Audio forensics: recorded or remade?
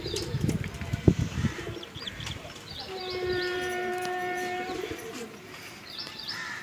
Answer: remade